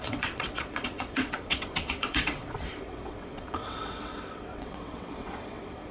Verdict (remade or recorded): remade